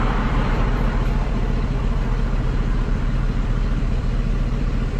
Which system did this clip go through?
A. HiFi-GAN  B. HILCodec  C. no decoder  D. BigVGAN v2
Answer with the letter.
D